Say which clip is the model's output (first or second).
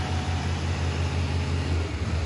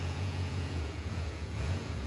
second